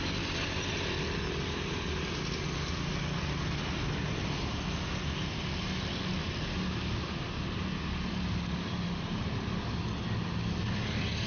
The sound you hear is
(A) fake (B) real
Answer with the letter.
B